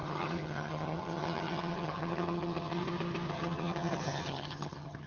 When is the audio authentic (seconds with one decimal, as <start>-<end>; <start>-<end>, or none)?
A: 2.8-3.3